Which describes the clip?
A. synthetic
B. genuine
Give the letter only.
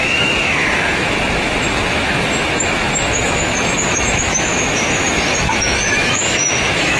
A